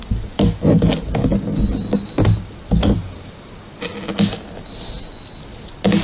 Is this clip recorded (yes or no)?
yes